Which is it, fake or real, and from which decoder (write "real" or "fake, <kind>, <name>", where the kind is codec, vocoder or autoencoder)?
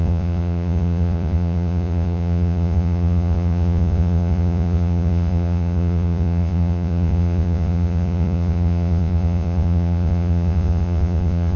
fake, vocoder, Vocos